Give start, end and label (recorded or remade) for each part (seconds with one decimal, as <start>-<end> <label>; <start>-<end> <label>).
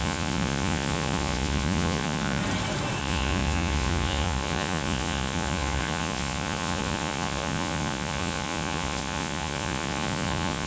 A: 0.0-2.4 remade; 2.4-3.0 recorded; 3.0-10.7 remade